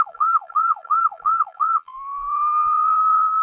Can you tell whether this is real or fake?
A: fake